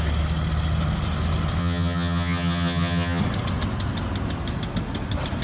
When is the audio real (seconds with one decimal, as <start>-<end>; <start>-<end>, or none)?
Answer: 0.0-1.6; 3.2-5.4